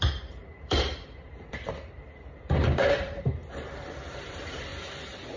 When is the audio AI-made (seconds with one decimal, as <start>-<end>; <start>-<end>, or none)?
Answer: 0.0-3.4; 4.1-4.7